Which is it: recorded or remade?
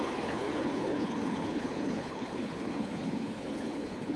remade